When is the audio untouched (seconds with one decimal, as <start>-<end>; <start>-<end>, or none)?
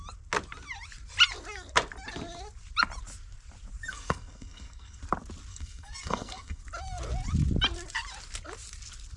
0.0-3.9; 5.0-5.5; 6.6-9.2